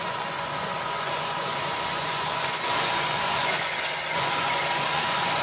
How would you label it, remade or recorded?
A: remade